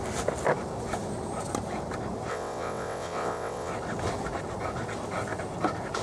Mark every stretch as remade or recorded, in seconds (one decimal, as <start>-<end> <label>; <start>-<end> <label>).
0.0-2.3 recorded; 2.3-3.7 remade; 3.7-6.0 recorded